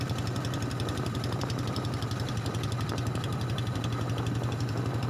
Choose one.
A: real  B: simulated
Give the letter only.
B